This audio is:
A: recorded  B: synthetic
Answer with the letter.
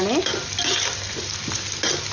A